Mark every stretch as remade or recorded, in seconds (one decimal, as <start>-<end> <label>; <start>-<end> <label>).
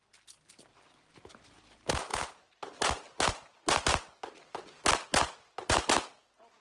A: 0.0-6.6 recorded